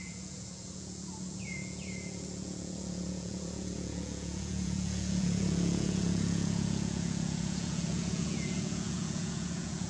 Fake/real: fake